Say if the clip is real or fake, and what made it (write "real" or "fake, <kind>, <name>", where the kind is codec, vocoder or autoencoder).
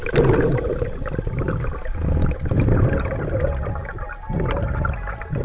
real